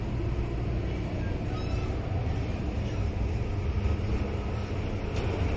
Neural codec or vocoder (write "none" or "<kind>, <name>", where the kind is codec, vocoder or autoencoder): none